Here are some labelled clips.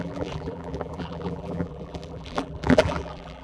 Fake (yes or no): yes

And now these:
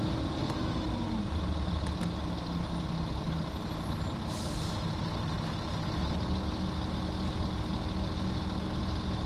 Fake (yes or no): no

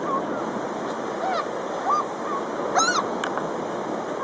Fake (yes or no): no